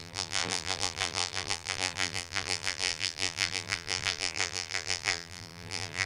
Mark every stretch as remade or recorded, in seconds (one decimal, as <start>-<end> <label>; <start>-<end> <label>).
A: 0.0-6.1 remade